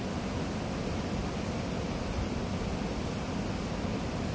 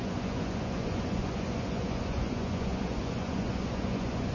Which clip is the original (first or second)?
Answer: first